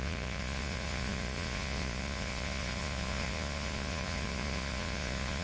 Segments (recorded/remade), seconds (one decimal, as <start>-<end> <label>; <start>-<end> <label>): 0.0-5.4 remade